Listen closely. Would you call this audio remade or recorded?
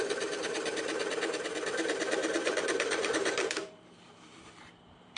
remade